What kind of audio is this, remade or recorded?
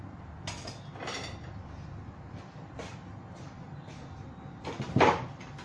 recorded